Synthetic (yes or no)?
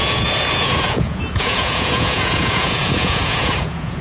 yes